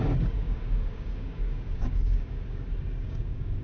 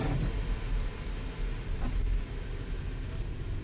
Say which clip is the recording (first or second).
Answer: second